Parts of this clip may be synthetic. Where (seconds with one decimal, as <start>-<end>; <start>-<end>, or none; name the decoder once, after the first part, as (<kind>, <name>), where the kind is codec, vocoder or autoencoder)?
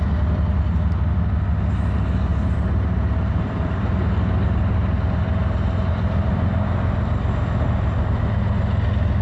2.3-3.9 (vocoder, BigVGAN v2); 5.4-6.3